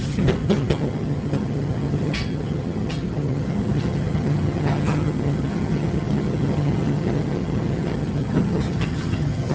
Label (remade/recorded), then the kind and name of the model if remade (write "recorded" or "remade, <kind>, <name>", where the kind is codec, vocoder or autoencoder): remade, vocoder, HiFi-GAN